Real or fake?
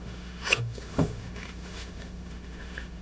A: fake